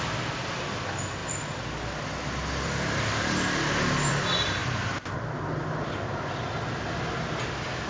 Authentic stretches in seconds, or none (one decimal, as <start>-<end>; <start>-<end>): 0.0-7.9